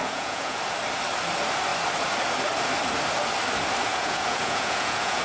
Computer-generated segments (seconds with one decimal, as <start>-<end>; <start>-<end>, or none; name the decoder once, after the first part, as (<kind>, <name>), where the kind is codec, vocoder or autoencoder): 0.0-0.6 (vocoder, Vocos); 3.9-5.2